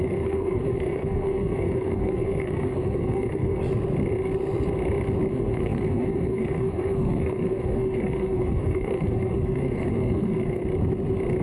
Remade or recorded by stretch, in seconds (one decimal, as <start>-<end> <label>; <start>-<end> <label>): 0.0-3.6 remade; 3.6-5.3 recorded; 5.3-10.6 remade; 10.6-11.4 recorded